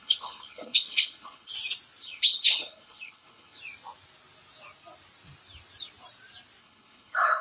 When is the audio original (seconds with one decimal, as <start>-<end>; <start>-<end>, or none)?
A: 1.5-2.0; 3.6-6.6